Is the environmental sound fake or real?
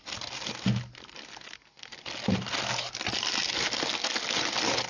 real